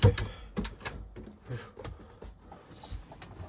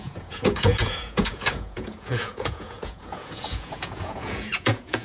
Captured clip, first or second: first